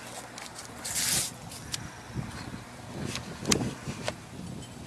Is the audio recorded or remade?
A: recorded